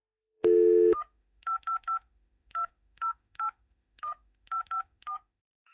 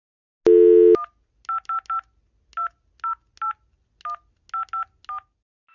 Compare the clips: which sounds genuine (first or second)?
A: second